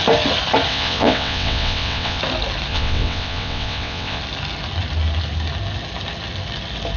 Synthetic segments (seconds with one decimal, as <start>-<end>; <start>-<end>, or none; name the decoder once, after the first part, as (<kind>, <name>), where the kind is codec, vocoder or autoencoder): 0.7-2.2 (vocoder, WaveNeXt); 2.7-4.2